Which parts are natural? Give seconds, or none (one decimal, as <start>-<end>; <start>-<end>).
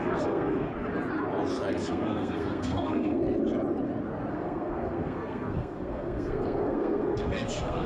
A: 0.7-1.7; 3.2-4.3